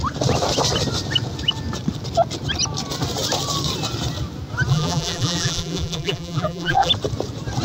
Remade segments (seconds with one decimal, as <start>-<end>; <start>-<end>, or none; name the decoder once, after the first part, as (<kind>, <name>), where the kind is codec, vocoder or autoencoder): 4.7-6.9 (vocoder, BigVGAN v2)